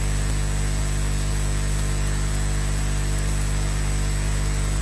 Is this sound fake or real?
real